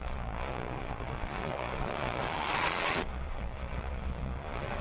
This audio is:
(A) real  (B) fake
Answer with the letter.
B